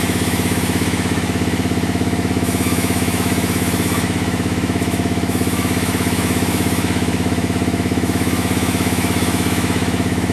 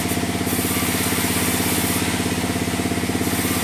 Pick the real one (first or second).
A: second